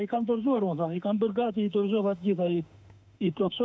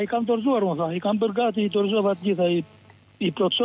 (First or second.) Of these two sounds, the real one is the second